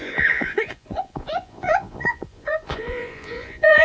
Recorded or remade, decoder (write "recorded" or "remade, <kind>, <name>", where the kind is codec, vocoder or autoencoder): remade, vocoder, Vocos